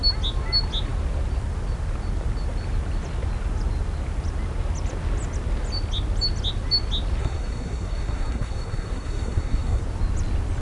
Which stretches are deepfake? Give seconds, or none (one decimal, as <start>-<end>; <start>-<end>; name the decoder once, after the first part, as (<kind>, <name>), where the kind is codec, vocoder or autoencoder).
7.2-9.8 (codec, SNAC)